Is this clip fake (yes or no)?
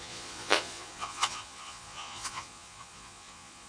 yes